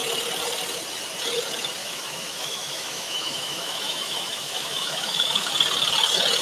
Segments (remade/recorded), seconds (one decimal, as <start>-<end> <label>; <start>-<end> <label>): 0.0-1.8 recorded; 1.8-5.5 remade; 5.5-6.4 recorded